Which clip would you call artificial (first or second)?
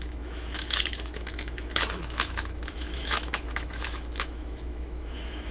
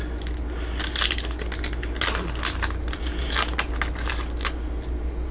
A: first